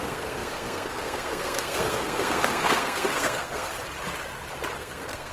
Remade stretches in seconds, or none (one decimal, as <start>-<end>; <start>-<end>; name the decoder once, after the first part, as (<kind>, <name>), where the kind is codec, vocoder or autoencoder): 0.0-3.7 (codec, SNAC); 4.8-5.3